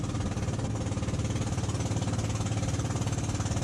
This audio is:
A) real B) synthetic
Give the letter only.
A